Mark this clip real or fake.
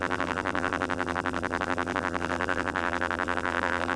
fake